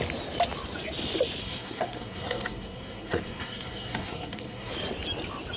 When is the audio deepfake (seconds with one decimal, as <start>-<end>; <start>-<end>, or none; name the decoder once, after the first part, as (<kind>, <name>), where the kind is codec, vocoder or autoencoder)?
1.4-4.7 (codec, SNAC)